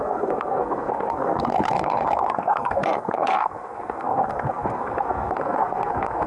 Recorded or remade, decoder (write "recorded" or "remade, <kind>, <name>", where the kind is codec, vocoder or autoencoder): remade, codec, SNAC